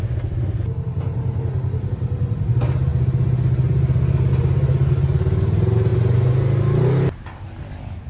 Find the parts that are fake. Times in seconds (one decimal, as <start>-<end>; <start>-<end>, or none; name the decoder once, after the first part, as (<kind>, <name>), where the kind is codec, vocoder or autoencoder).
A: none

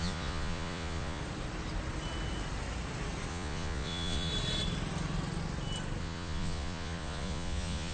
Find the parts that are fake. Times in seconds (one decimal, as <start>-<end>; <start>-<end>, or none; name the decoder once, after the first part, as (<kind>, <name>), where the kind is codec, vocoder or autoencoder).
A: 0.0-1.2 (vocoder, Vocos); 3.3-4.3; 6.0-7.9

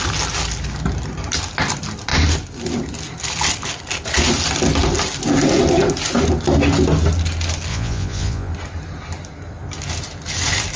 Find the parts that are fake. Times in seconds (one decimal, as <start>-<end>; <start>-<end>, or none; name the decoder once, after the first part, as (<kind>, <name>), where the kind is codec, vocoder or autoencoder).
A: 7.7-8.5 (vocoder, Vocos)

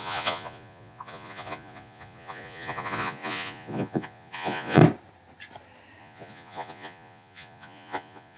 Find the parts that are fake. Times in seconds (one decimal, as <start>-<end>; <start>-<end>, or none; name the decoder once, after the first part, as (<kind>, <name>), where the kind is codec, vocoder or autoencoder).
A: 0.0-4.8 (vocoder, Vocos); 6.0-8.4

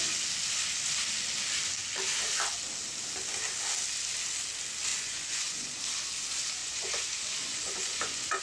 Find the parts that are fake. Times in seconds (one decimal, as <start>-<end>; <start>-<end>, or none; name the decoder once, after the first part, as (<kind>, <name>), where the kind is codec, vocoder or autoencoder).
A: 4.9-5.8 (vocoder, Vocos); 6.6-8.4

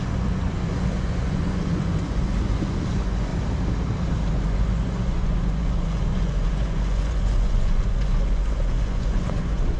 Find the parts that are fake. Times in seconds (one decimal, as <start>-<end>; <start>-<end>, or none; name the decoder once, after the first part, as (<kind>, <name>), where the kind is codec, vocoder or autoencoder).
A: 0.0-3.3 (vocoder, Vocos); 4.3-9.8